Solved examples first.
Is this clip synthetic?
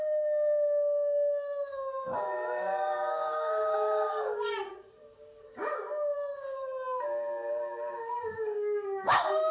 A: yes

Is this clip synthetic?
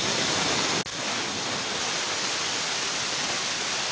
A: no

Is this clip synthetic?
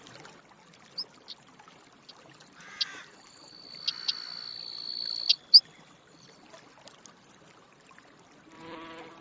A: no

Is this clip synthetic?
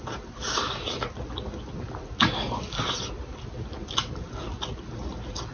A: no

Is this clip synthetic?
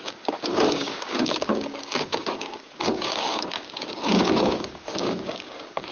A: yes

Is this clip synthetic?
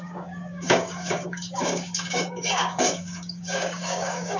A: yes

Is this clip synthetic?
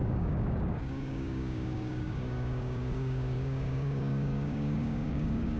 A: yes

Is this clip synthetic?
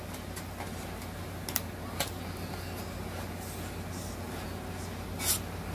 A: no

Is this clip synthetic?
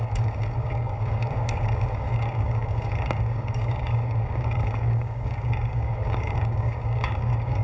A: yes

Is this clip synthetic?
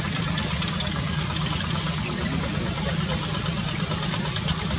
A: no